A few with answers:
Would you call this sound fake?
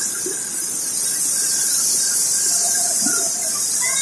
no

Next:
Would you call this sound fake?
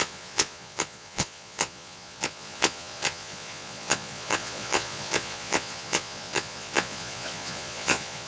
yes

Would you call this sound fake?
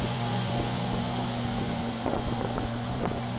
yes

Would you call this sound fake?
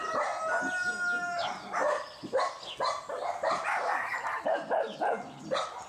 no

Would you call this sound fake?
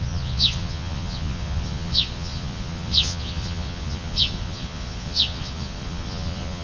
yes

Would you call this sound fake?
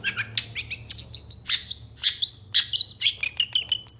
no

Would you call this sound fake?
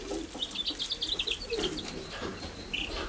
no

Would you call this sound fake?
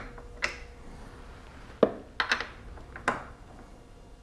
no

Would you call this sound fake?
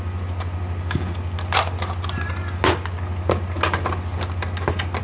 no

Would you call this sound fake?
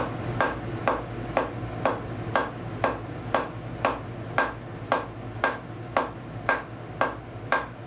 no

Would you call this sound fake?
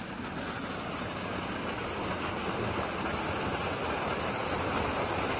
no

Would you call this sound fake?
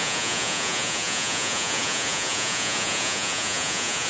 yes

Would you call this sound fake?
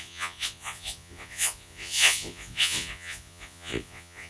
yes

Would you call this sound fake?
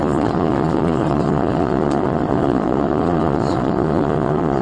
yes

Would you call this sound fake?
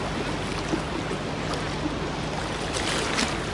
no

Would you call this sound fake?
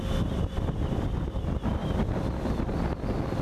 no